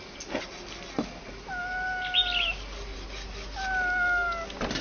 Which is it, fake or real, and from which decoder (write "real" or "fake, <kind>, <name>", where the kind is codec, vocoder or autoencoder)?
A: real